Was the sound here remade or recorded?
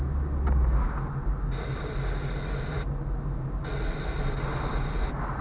recorded